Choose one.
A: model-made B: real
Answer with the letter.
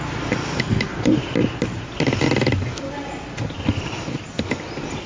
B